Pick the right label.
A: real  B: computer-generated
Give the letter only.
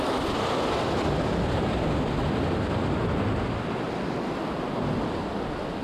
A